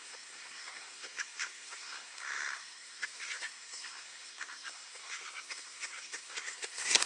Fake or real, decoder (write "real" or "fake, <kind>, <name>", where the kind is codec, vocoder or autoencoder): fake, codec, SNAC